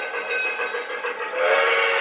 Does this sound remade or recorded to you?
recorded